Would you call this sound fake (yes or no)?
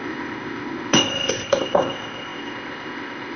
yes